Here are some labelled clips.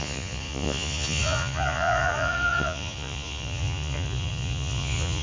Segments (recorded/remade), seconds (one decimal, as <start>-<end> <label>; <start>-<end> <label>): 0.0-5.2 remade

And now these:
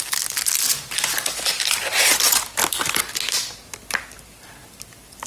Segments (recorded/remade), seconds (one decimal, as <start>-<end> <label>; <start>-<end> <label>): 0.0-5.3 recorded

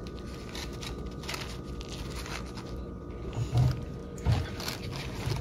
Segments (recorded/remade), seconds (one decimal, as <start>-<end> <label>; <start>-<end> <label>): 0.0-5.4 recorded

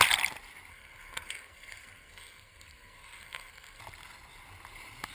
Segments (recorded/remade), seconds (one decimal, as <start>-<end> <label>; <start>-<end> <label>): 0.0-0.7 recorded; 0.7-3.8 remade; 3.8-5.1 recorded